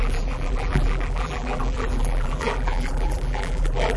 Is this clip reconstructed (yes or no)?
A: yes